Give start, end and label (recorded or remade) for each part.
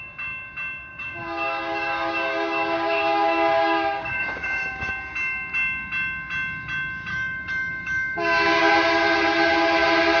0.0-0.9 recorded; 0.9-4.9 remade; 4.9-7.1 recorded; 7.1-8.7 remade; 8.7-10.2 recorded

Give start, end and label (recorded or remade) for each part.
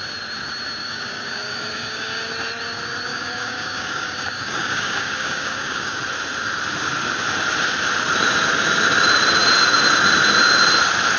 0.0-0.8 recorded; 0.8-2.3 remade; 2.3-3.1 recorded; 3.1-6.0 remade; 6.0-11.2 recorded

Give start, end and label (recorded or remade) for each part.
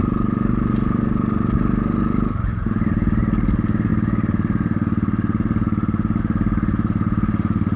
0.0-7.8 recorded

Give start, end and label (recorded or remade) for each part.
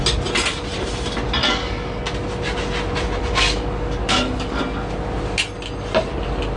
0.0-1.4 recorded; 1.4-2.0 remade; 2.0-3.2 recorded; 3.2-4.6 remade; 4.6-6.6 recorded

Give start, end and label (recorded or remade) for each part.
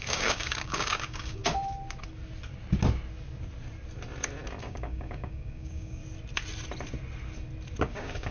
0.0-1.4 remade; 1.4-4.6 recorded; 4.6-6.0 remade; 6.0-7.8 recorded; 7.8-8.3 remade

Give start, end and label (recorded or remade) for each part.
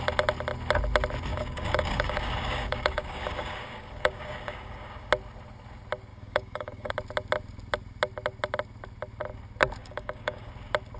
0.0-1.3 recorded; 1.3-5.1 remade; 5.1-6.1 recorded; 6.1-6.9 remade; 6.9-9.8 recorded; 9.8-10.5 remade; 10.5-11.0 recorded